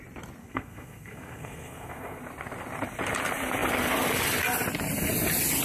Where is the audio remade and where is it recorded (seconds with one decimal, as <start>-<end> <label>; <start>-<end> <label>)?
0.0-0.4 recorded; 0.4-2.2 remade; 2.2-5.6 recorded